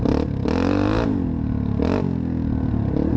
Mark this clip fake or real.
real